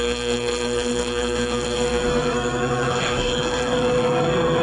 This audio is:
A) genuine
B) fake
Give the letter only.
B